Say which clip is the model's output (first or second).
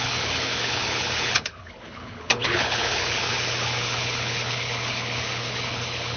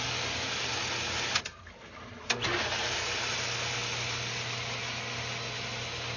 first